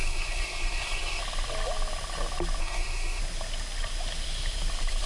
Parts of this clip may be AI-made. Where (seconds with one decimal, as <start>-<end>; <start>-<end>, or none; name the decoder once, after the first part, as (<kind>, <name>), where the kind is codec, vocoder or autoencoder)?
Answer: 0.0-1.2 (codec, SNAC); 2.6-3.2